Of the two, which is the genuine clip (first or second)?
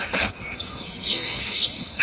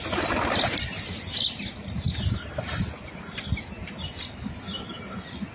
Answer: second